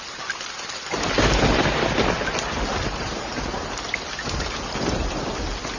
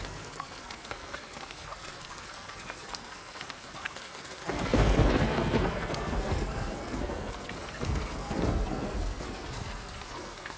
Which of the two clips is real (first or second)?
first